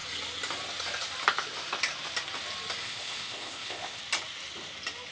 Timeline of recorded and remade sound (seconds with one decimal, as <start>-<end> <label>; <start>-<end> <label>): 0.0-2.8 recorded; 2.8-4.0 remade; 4.0-5.1 recorded